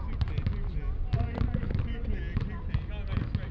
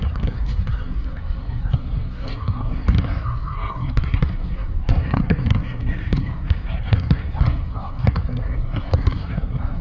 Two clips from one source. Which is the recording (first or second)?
first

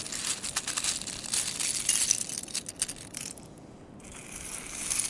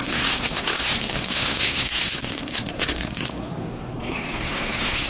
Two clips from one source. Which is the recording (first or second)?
first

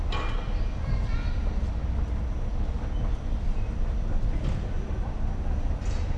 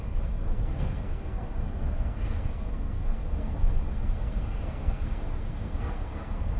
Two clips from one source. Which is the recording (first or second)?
first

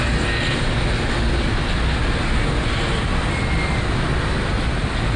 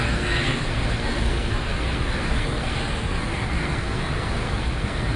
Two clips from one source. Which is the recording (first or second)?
first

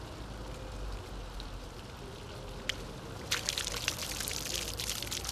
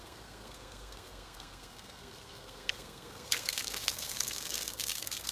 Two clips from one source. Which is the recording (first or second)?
first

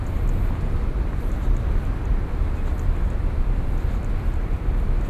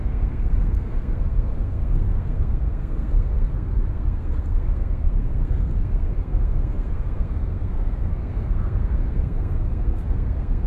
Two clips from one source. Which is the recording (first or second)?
first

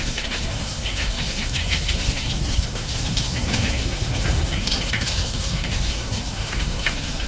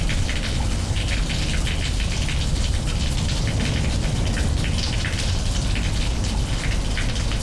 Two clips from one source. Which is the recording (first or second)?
second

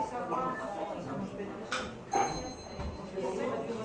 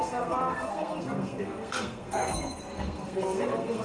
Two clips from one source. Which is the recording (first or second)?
first